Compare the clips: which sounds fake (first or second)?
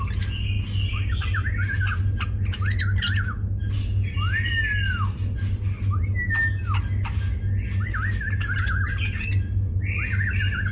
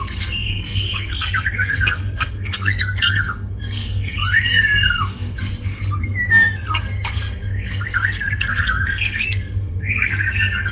second